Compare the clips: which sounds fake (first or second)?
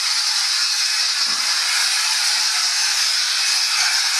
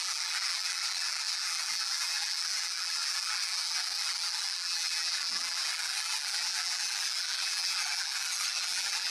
second